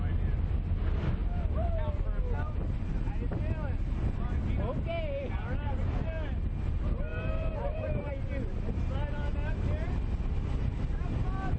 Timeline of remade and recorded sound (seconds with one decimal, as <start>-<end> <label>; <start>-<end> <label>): 0.0-1.2 recorded; 1.2-2.2 remade; 2.2-7.1 recorded; 7.1-8.1 remade; 8.1-11.6 recorded